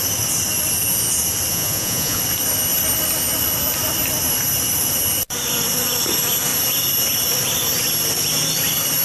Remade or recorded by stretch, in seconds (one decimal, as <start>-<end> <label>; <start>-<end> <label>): 0.0-1.5 recorded; 1.5-2.2 remade; 2.2-9.0 recorded